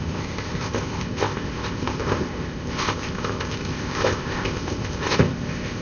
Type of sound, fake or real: fake